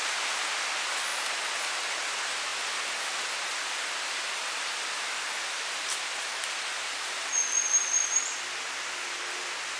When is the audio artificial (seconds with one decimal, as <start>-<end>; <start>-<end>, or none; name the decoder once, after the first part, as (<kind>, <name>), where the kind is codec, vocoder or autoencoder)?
none